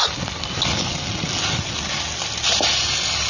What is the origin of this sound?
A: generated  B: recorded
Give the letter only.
B